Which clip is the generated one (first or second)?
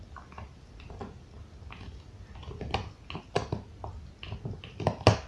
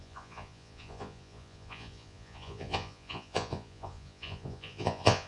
second